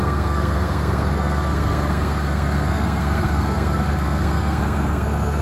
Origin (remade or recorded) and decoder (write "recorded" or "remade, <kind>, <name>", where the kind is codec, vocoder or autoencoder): remade, codec, SNAC